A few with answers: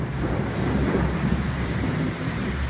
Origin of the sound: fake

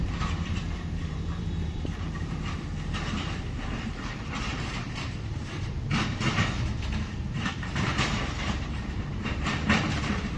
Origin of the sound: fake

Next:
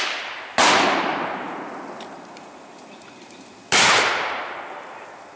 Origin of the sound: real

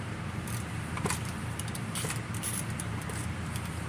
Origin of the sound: fake